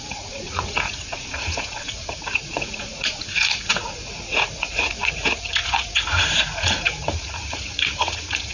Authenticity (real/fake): fake